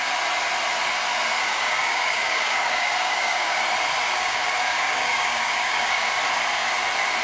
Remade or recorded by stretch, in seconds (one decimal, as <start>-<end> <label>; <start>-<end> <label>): 0.0-1.4 recorded; 1.4-3.6 remade; 3.6-4.1 recorded; 4.1-6.1 remade; 6.1-7.2 recorded